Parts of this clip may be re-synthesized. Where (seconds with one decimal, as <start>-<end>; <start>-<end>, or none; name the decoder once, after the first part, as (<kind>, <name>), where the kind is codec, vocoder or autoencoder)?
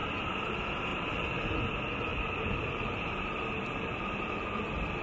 0.9-1.5 (vocoder, BigVGAN v2); 2.1-4.6